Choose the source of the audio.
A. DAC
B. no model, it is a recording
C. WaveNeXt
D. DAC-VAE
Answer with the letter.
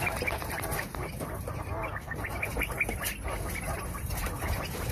B